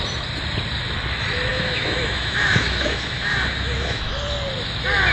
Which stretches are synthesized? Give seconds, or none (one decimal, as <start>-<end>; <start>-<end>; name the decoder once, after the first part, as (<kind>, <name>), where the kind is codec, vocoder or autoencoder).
1.5-4.1 (autoencoder, DAC-VAE)